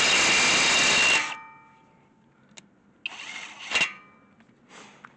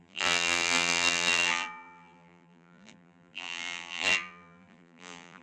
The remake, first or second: second